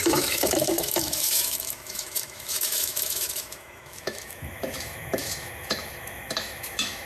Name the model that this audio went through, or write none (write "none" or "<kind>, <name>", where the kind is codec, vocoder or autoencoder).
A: autoencoder, DAC-VAE